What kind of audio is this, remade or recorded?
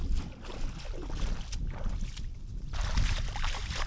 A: recorded